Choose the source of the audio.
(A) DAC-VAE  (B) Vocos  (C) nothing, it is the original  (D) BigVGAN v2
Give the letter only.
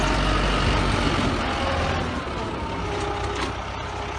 C